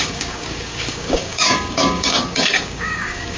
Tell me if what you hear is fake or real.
fake